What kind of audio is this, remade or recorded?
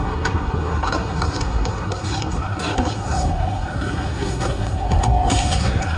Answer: remade